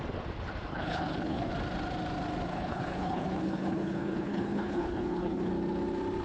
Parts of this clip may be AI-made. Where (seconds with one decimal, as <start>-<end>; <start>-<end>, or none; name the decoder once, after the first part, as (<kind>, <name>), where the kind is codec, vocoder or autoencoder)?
0.7-1.5 (codec, HILCodec); 2.5-5.5